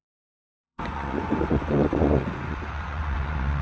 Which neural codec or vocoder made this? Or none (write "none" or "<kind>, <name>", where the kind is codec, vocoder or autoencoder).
vocoder, Vocos